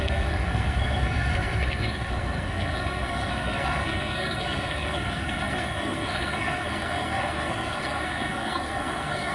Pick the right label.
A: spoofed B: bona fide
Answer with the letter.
A